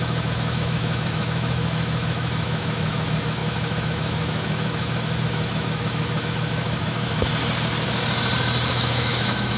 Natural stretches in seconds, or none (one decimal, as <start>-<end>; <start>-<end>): 7.3-8.7